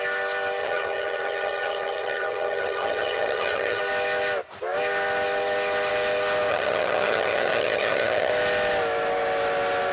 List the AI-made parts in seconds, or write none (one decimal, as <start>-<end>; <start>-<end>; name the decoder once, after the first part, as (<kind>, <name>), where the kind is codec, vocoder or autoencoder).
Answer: 0.6-3.8 (vocoder, HiFi-GAN); 6.5-8.3